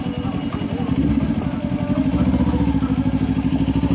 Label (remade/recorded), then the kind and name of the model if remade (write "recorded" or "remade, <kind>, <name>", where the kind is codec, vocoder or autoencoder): recorded